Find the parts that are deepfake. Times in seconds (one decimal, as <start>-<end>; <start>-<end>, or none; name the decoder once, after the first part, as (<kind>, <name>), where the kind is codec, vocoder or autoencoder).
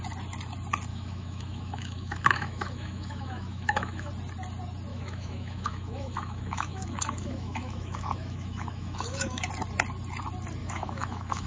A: 0.9-4.1 (autoencoder, DAC-VAE); 4.9-9.5; 10.6-11.5